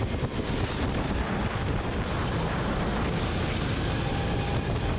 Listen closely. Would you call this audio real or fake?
real